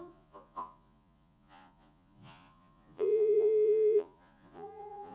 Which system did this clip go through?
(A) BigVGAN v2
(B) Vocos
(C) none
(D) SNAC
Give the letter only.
B